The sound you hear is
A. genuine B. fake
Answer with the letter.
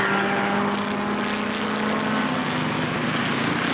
A